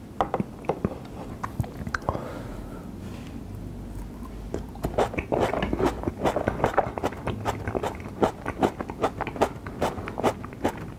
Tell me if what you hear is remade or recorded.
recorded